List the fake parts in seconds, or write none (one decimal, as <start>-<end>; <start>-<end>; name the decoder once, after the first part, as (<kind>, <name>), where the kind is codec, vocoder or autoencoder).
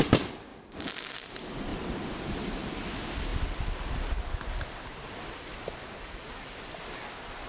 none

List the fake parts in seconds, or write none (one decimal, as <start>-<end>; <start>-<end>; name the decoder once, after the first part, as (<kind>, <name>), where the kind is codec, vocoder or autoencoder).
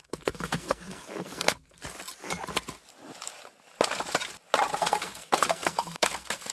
0.0-1.8 (codec, SNAC); 4.7-6.5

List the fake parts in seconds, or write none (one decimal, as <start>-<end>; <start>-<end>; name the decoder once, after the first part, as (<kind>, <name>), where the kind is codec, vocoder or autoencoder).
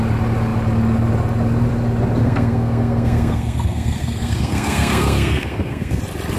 2.2-6.0 (codec, SNAC)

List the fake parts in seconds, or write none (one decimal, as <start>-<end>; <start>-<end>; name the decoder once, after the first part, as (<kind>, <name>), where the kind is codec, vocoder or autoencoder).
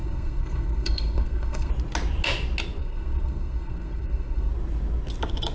0.0-1.7 (codec, SNAC); 2.8-4.5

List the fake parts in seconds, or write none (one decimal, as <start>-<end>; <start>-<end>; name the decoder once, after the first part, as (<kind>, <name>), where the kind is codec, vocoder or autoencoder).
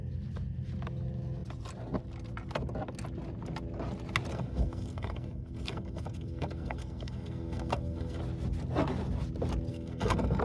4.3-8.2 (codec, SNAC); 9.7-10.4